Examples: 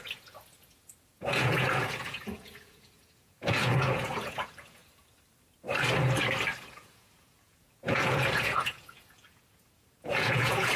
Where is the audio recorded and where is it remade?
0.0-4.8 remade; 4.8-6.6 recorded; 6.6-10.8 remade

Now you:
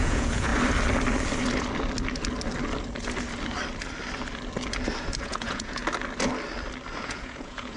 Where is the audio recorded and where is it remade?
0.0-0.5 remade; 0.5-5.2 recorded; 5.2-5.8 remade; 5.8-7.0 recorded; 7.0-7.8 remade

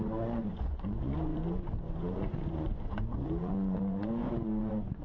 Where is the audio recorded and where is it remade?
0.0-5.0 remade

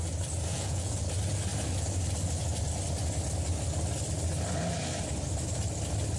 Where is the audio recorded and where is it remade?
0.0-0.5 recorded; 0.5-1.0 remade; 1.0-6.2 recorded

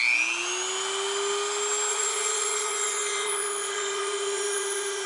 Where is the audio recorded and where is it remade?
0.0-1.9 recorded; 1.9-5.1 remade

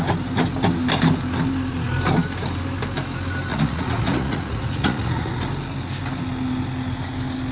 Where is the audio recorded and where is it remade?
0.0-3.5 recorded; 3.5-5.3 remade; 5.3-7.5 recorded